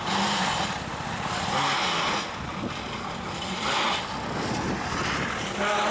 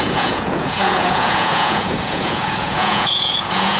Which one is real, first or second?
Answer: first